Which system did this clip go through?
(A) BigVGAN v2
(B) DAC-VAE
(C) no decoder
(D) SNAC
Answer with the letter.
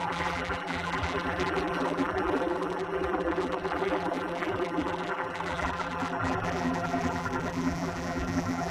A